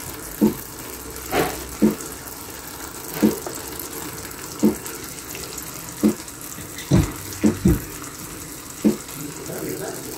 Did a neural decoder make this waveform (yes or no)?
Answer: no